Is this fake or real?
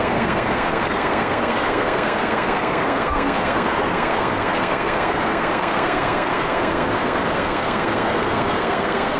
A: fake